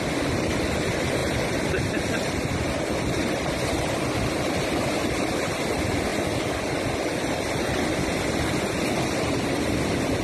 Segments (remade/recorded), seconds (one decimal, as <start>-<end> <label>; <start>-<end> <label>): 0.0-10.2 recorded